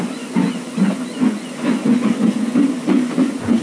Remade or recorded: remade